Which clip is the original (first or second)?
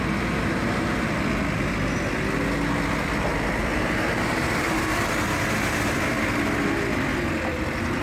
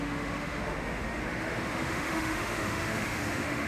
first